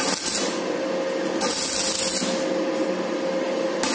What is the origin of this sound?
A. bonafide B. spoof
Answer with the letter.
A